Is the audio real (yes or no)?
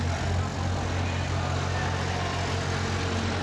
yes